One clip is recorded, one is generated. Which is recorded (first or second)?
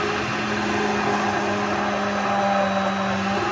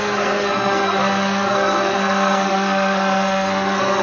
first